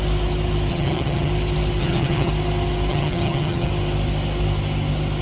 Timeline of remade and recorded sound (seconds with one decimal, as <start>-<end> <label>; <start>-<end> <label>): 0.0-0.7 recorded; 0.7-1.3 remade; 1.3-1.8 recorded; 1.8-2.3 remade; 2.3-2.9 recorded; 2.9-3.7 remade; 3.7-5.2 recorded